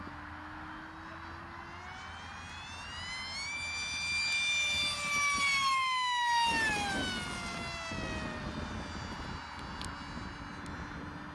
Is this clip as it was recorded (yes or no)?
yes